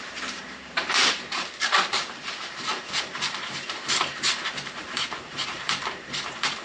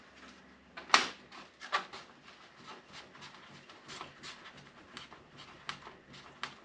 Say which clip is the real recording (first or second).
second